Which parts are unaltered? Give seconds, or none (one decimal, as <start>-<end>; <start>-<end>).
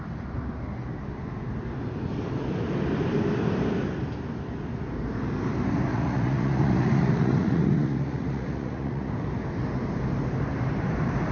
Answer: 0.0-5.9; 9.1-11.3